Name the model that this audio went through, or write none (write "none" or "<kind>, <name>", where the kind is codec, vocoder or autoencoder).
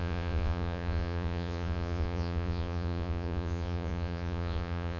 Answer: vocoder, Vocos